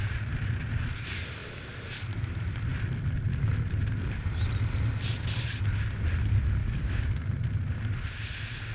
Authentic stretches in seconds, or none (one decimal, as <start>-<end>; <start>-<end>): 0.0-6.6; 7.3-8.7